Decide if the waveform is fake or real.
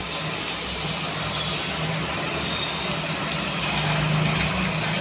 real